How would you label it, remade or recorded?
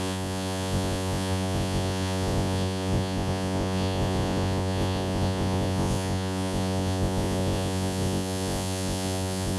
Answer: remade